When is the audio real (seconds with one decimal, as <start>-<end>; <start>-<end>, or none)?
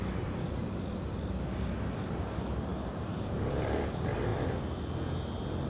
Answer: 0.0-2.7; 3.5-5.7